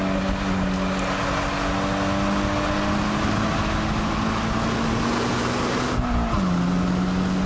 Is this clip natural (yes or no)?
yes